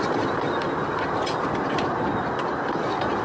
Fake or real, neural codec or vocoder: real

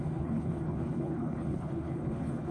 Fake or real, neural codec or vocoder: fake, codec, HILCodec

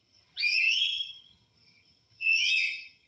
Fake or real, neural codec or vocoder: fake, vocoder, HiFi-GAN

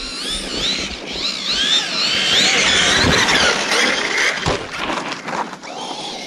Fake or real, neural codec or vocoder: real